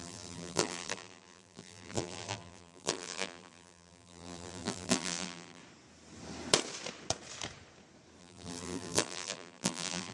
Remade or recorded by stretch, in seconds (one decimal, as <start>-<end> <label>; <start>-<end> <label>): 0.0-5.6 remade; 5.6-8.2 recorded; 8.2-10.1 remade